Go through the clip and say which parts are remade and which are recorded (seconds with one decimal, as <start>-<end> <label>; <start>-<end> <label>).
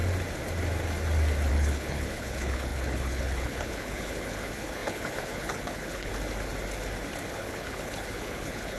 0.0-1.5 recorded; 1.5-6.1 remade; 6.1-7.3 recorded; 7.3-8.8 remade